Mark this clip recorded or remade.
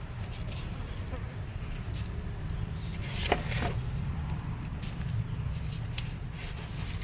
remade